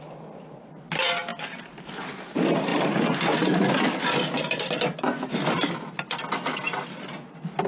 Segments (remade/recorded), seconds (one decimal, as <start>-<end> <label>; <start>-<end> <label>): 0.0-7.7 recorded